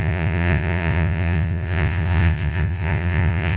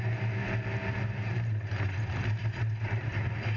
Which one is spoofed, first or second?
first